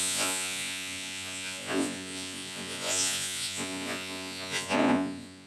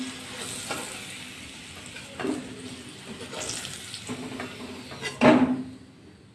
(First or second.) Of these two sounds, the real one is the second